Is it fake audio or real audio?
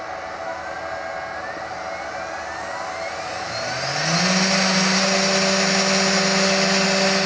real